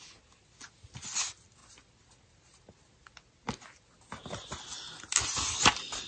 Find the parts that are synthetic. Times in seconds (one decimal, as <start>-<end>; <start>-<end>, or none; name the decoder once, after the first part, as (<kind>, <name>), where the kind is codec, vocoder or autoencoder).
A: none